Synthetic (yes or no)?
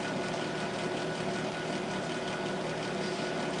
no